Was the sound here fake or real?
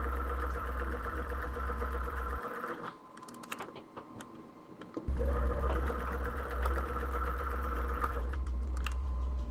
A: fake